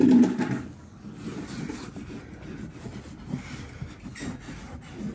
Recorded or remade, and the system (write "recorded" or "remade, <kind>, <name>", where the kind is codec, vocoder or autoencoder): recorded